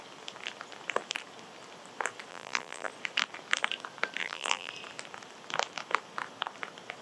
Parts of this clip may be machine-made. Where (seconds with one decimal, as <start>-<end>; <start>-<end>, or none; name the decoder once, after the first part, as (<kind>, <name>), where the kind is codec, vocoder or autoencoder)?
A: 2.3-2.9 (vocoder, BigVGAN v2); 4.2-4.7